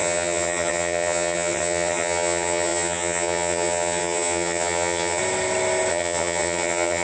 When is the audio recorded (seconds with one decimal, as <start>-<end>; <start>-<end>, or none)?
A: 5.2-5.9